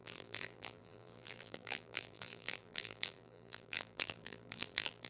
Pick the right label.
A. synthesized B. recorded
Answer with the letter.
A